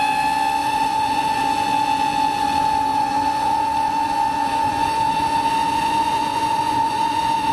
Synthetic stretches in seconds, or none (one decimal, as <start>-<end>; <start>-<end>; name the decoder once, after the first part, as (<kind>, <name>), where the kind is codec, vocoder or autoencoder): 0.6-1.4 (vocoder, Vocos); 2.9-7.5